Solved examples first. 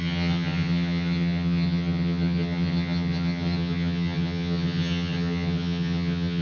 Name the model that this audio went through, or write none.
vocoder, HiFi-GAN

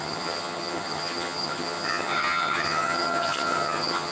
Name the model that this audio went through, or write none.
vocoder, HiFi-GAN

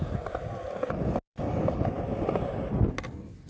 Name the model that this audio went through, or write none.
none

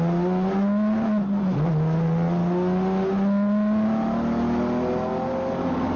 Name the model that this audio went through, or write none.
none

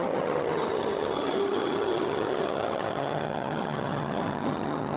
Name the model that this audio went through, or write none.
vocoder, HiFi-GAN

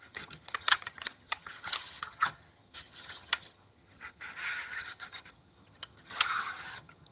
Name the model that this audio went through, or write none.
vocoder, HiFi-GAN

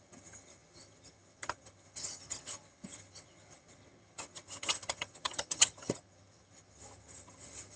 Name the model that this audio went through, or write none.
vocoder, HiFi-GAN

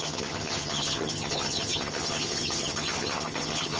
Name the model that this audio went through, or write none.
vocoder, HiFi-GAN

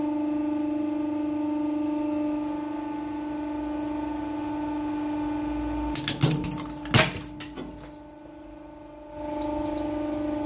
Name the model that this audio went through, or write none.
none